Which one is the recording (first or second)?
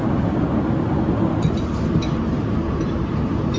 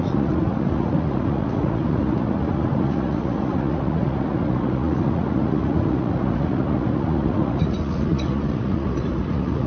first